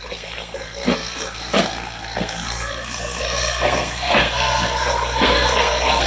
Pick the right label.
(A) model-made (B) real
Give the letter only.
A